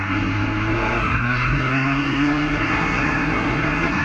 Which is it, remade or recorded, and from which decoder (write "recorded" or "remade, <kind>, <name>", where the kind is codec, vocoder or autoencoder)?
remade, codec, SNAC